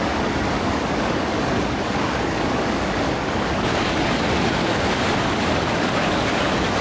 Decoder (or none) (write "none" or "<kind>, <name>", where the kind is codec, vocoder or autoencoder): codec, DAC